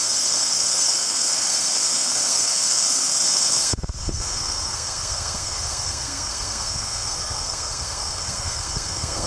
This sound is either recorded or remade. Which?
remade